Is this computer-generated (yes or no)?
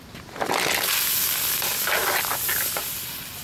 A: no